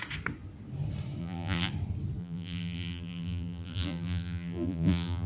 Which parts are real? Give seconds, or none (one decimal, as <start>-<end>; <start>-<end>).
0.0-1.2; 1.7-2.2